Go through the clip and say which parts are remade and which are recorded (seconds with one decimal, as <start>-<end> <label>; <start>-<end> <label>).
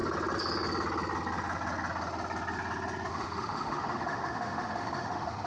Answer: 0.0-3.1 recorded; 3.1-5.5 remade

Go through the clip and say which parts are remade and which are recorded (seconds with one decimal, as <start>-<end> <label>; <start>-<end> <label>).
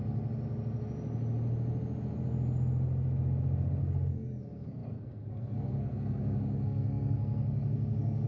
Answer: 0.0-3.8 recorded; 3.8-8.3 remade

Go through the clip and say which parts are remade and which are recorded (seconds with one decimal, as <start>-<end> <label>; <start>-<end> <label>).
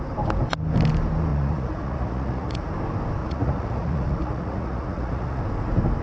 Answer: 0.0-1.3 recorded; 1.3-2.7 remade; 2.7-3.2 recorded; 3.2-5.4 remade; 5.4-6.0 recorded